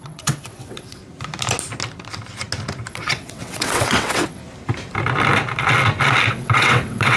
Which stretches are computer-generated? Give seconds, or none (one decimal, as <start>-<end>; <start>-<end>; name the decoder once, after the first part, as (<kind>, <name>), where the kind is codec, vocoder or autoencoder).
0.0-1.0 (vocoder, WaveNeXt); 2.9-4.4; 6.3-7.2